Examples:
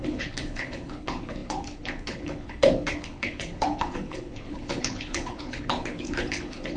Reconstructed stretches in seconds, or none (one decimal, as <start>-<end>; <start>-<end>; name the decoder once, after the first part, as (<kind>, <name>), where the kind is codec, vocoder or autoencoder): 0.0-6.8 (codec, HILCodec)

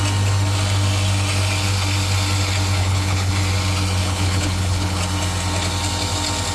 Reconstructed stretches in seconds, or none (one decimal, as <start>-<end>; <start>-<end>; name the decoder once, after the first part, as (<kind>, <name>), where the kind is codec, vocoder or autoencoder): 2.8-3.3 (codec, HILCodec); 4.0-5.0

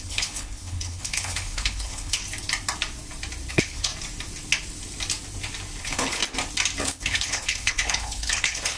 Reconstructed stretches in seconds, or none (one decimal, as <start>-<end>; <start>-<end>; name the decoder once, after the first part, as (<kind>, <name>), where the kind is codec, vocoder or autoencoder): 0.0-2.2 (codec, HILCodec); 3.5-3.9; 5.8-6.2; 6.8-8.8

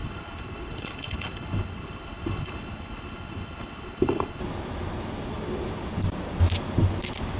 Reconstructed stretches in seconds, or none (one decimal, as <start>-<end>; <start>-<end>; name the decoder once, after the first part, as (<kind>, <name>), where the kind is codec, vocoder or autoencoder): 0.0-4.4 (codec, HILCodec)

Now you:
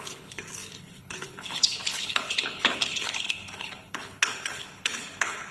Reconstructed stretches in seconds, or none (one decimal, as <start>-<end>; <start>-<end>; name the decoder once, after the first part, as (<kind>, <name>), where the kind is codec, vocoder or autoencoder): 0.0-5.5 (codec, HILCodec)